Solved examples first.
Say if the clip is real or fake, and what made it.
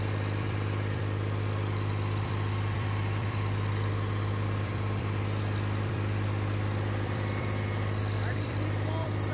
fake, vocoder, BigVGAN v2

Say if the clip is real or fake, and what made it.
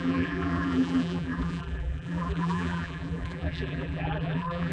fake, vocoder, BigVGAN v2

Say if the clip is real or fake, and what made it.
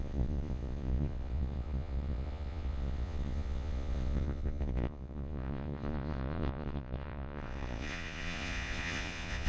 fake, vocoder, Vocos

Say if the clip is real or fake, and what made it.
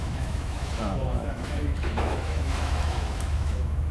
fake, autoencoder, DAC-VAE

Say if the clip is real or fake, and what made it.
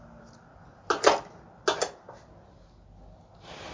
real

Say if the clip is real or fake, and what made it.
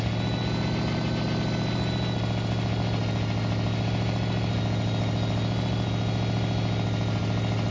real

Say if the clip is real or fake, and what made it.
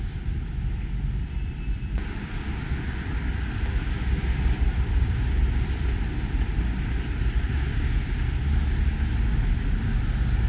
real